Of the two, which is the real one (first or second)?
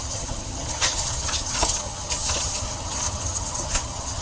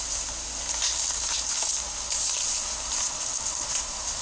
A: second